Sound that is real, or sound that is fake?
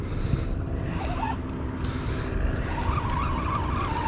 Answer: real